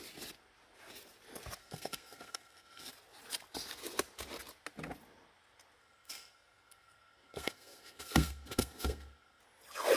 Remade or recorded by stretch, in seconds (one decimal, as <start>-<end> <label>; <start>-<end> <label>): 0.0-1.6 recorded; 1.6-2.9 remade; 2.9-5.8 recorded; 5.8-9.4 remade; 9.4-10.0 recorded